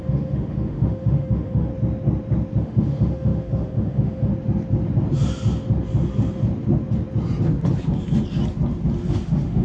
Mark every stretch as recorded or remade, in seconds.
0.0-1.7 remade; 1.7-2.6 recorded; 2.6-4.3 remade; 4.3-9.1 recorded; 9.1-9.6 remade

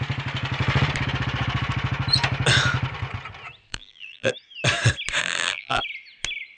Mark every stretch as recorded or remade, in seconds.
0.0-3.7 recorded; 3.7-4.3 remade; 4.3-5.2 recorded; 5.2-5.8 remade; 5.8-6.6 recorded

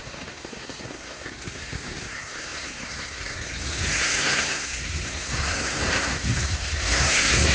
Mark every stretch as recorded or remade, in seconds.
0.0-7.5 remade